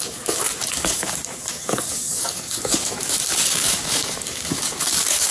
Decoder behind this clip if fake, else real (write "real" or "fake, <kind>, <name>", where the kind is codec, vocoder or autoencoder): fake, codec, DAC